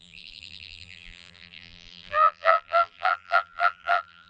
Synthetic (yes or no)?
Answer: yes